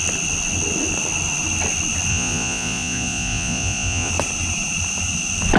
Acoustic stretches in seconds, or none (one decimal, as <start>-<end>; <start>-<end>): 0.0-2.1; 4.1-5.6